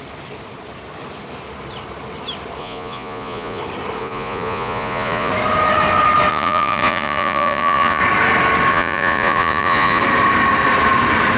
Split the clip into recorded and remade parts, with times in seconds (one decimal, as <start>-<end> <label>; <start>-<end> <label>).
0.0-2.6 recorded; 2.6-3.6 remade; 3.6-4.0 recorded; 4.0-5.3 remade; 5.3-6.3 recorded; 6.3-8.0 remade; 8.0-8.7 recorded; 8.7-10.0 remade; 10.0-11.4 recorded